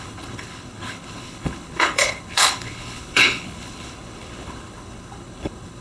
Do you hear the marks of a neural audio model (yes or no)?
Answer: yes